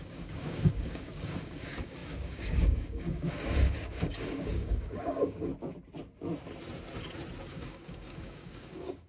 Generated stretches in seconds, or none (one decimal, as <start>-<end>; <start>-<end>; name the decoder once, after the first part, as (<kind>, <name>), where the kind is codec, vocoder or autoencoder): 0.0-5.5 (codec, DAC); 7.4-9.1